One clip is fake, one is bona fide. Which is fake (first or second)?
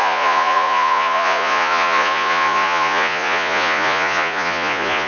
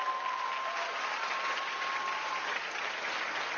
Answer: first